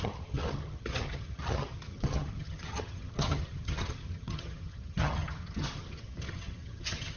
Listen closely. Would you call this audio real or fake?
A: fake